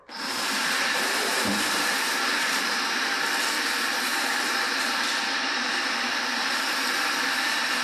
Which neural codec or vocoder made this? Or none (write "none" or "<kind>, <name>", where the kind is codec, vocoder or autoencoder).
vocoder, BigVGAN v2